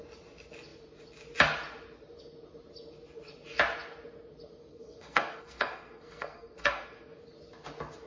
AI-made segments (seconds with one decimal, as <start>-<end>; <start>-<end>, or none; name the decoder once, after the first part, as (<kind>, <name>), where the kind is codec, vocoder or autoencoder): 4.7-7.1 (codec, SNAC)